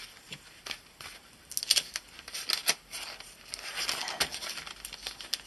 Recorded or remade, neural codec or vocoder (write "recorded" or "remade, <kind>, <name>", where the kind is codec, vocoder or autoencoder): recorded